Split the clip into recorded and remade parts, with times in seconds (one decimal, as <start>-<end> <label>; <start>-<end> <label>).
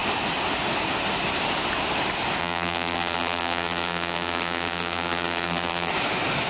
0.0-2.4 recorded; 2.4-5.9 remade; 5.9-6.5 recorded